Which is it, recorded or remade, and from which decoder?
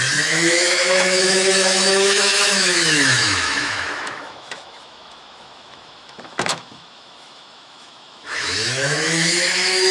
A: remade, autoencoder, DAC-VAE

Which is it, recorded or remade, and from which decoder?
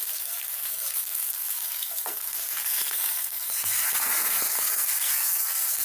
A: remade, codec, SNAC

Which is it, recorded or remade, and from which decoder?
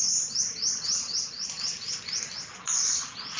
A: recorded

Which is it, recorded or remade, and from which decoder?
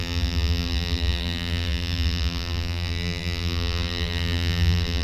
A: remade, vocoder, BigVGAN v2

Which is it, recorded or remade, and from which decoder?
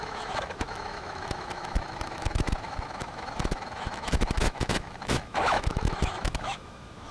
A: remade, autoencoder, DAC-VAE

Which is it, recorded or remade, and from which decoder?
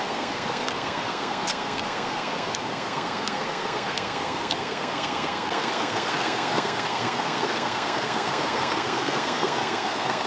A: remade, codec, SNAC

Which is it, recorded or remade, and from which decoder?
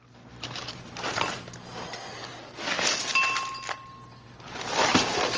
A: recorded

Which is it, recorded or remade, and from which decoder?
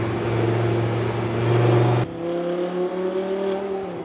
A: recorded